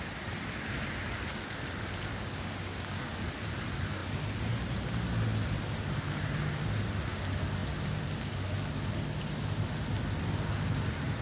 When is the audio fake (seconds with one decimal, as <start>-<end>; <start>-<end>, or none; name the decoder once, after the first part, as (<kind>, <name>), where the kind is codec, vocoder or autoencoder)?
2.1-3.1 (codec, DAC)